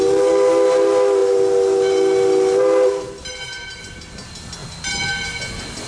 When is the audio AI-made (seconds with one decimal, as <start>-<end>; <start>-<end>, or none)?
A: none